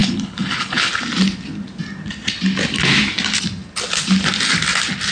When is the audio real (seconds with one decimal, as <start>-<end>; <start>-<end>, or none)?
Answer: 0.9-5.1